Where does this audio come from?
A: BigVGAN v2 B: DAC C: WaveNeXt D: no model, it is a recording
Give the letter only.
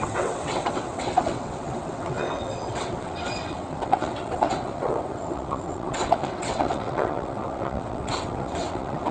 C